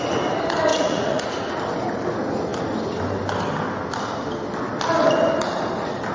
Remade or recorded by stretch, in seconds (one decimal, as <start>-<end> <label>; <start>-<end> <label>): 0.0-0.7 recorded; 0.7-1.6 remade; 1.6-6.1 recorded